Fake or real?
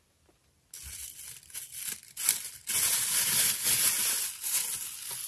real